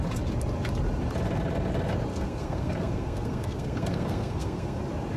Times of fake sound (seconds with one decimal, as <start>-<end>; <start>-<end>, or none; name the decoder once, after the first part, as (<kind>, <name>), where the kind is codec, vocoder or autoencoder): 2.1-4.8 (codec, SNAC)